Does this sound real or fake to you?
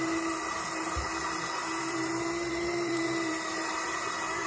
fake